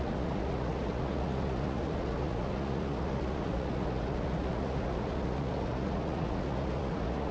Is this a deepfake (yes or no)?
yes